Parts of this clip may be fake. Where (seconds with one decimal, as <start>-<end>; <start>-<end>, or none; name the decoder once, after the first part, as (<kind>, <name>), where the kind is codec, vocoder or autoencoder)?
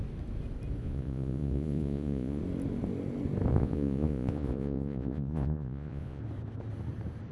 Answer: 0.8-2.4 (vocoder, Vocos); 3.5-6.2